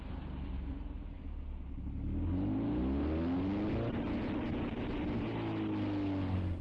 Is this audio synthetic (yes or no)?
no